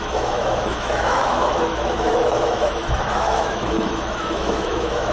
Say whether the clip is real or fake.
fake